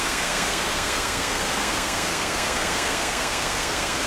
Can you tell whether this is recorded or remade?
remade